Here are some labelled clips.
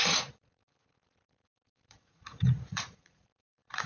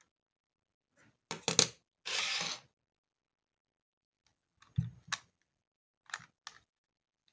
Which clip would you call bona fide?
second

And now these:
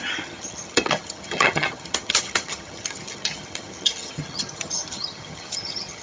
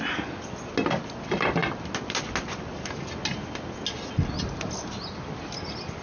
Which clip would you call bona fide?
second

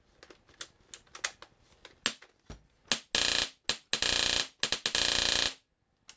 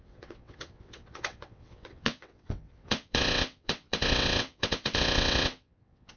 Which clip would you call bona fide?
first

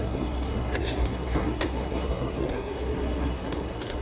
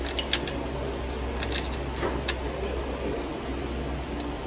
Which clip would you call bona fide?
second